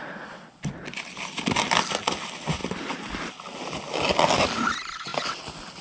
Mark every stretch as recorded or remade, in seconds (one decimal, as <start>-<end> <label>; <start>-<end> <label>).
0.0-5.8 recorded